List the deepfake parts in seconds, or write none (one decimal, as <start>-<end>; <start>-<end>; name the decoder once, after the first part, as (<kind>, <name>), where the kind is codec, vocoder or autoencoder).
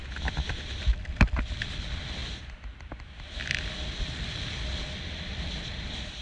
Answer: none